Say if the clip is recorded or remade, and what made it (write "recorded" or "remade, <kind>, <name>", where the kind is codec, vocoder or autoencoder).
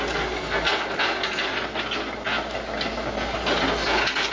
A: recorded